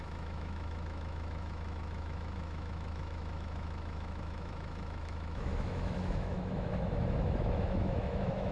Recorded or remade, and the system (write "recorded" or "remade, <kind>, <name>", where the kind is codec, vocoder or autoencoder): remade, autoencoder, DAC-VAE